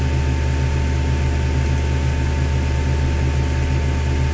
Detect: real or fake real